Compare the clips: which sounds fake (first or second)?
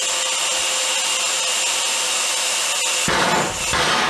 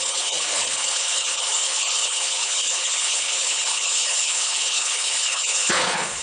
second